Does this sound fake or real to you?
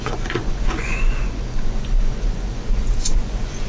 fake